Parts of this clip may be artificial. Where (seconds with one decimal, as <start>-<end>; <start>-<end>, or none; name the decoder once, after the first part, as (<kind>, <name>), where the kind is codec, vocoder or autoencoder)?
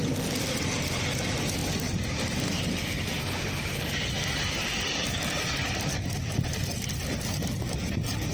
none